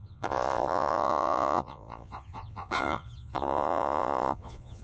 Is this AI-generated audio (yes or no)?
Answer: yes